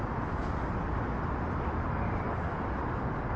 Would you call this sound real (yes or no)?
yes